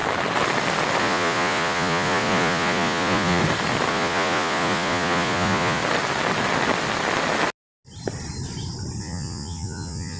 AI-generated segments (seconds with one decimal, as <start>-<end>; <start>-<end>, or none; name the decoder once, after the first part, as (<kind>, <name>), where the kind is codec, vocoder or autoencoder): 1.0-3.4 (vocoder, Vocos); 3.9-5.8; 9.0-10.2